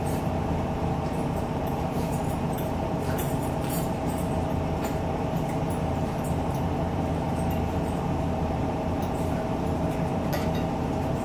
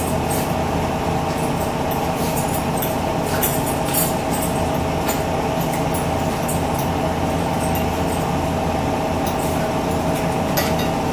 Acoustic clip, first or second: second